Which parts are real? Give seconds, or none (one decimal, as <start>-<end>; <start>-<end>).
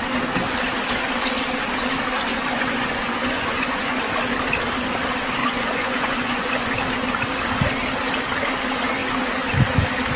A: 0.0-2.3; 4.1-5.4; 6.7-10.2